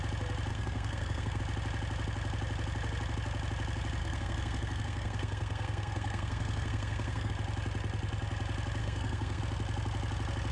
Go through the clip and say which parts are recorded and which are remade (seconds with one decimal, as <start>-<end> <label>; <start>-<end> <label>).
0.0-0.5 recorded; 0.5-1.4 remade; 1.4-4.0 recorded; 4.0-7.3 remade; 7.3-8.8 recorded; 8.8-9.4 remade; 9.4-10.5 recorded